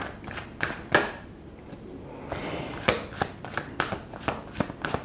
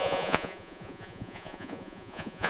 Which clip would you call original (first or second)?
first